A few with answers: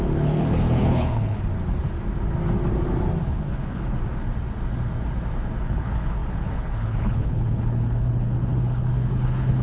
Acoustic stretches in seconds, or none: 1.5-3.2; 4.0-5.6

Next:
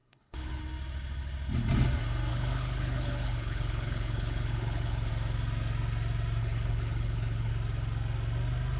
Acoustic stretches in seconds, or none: 0.6-2.3; 5.1-6.4; 7.5-8.8

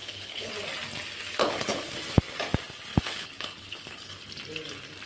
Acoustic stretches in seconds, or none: 0.5-1.4; 1.9-2.9; 4.2-5.1

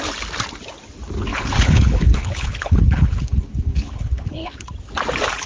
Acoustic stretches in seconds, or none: 0.0-1.3; 4.6-5.5

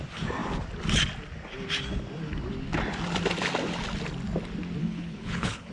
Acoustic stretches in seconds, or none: 0.0-4.8